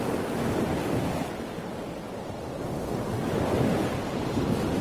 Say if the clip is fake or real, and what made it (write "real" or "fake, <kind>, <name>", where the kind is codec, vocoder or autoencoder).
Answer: real